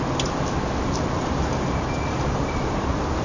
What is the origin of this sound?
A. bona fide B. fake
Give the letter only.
A